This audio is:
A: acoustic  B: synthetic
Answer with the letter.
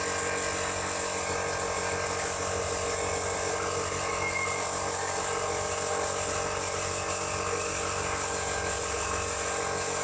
A